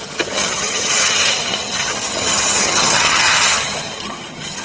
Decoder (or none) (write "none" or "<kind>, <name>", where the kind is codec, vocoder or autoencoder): vocoder, HiFi-GAN